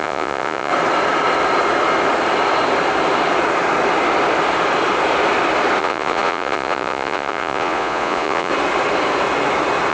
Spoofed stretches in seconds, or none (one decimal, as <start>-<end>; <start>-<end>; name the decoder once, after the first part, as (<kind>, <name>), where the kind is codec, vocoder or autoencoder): 0.0-0.7 (vocoder, Vocos); 5.8-8.5